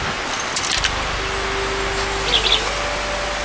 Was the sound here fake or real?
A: real